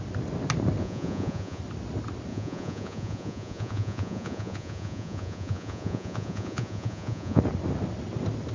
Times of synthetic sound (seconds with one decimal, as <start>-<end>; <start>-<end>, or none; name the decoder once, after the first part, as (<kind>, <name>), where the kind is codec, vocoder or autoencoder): 0.8-1.6 (vocoder, Vocos); 2.3-7.4